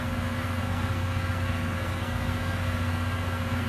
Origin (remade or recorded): remade